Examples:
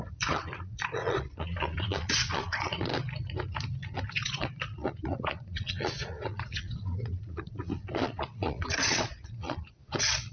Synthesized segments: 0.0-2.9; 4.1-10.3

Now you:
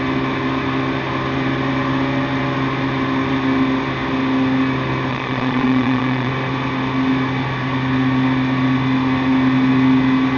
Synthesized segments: 5.1-6.3